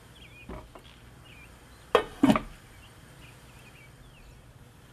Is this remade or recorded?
recorded